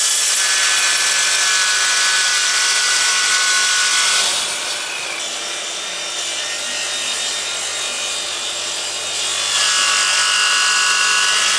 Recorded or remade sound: recorded